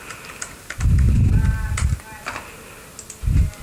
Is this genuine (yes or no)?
yes